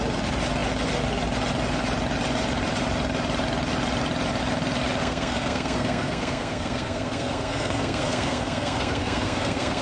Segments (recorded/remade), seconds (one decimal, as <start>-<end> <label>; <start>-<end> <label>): 0.0-5.0 recorded; 5.0-9.8 remade